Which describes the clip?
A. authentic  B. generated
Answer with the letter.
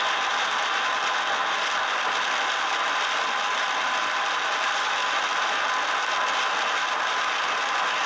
A